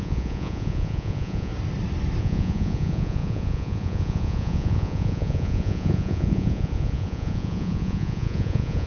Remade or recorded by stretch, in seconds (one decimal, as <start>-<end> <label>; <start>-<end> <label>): 0.0-1.5 remade; 1.5-2.2 recorded; 2.2-8.9 remade